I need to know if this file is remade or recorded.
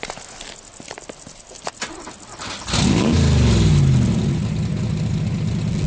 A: recorded